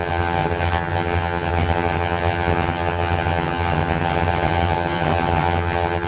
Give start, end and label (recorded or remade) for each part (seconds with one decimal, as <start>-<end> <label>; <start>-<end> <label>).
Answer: 0.0-6.1 remade